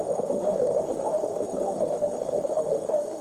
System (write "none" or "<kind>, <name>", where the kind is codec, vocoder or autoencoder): autoencoder, DAC-VAE